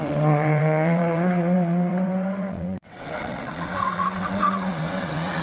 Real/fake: fake